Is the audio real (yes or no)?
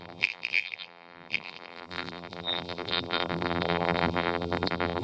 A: no